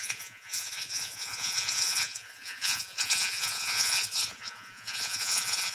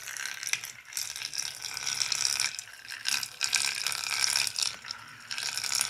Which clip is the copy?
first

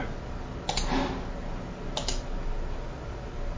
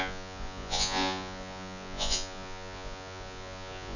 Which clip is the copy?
second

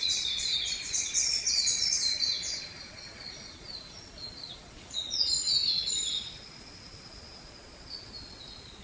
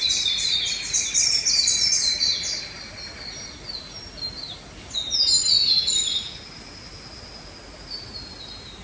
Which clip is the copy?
first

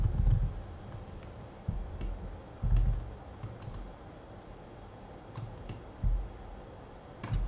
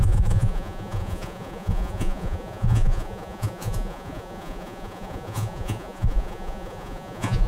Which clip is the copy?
second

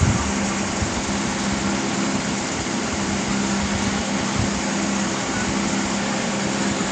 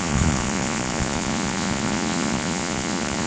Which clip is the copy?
second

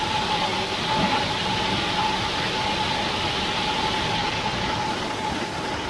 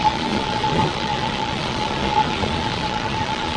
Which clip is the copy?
second